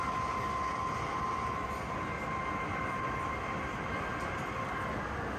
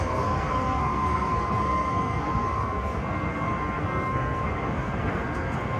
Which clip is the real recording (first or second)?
first